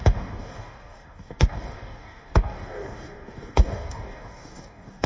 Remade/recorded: remade